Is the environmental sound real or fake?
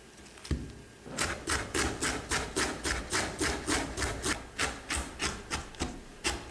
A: real